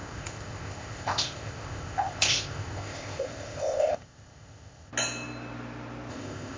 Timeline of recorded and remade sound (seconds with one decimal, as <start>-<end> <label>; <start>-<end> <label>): 0.0-4.9 remade; 4.9-6.1 recorded; 6.1-6.6 remade